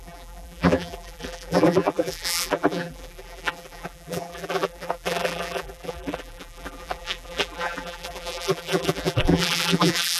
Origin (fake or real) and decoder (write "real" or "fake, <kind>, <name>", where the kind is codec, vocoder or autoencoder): fake, vocoder, BigVGAN v2